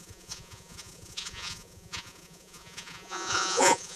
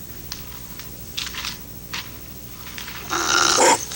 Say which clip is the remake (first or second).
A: first